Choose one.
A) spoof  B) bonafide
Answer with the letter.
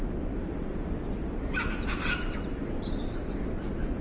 A